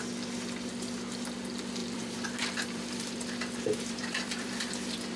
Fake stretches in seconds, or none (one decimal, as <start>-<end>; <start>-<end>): 1.8-5.2

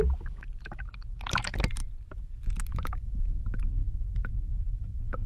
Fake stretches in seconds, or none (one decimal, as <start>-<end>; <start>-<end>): none